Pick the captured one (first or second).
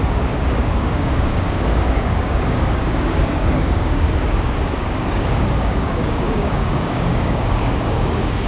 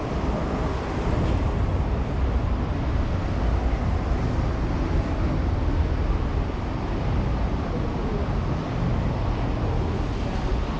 second